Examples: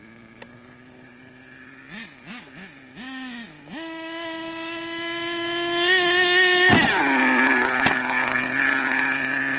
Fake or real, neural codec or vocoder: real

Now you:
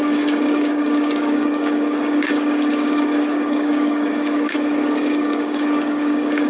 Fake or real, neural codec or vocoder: fake, codec, DAC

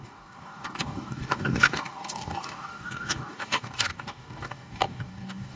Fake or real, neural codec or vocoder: fake, codec, DAC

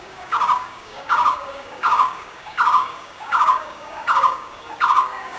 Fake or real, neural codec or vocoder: fake, codec, DAC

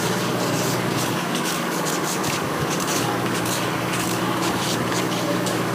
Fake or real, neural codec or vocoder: fake, codec, DAC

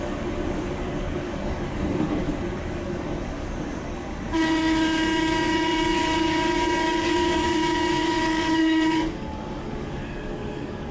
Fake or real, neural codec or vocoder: fake, codec, DAC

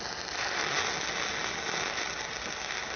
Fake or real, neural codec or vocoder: real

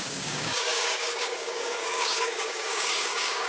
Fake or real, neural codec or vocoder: fake, codec, DAC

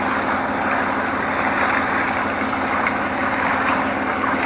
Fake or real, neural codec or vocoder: real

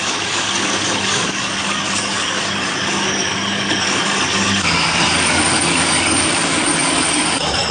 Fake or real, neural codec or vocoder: fake, codec, DAC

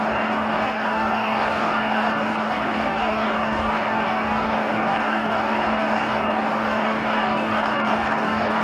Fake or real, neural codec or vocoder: fake, codec, DAC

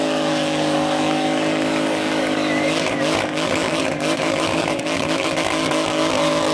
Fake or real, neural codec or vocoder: fake, codec, DAC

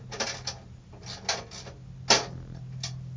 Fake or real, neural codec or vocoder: real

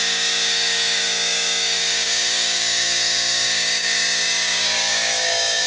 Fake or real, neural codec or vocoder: fake, codec, DAC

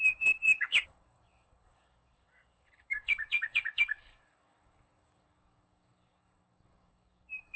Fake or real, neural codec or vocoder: fake, codec, DAC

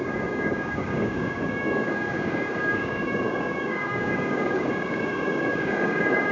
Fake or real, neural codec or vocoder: fake, codec, DAC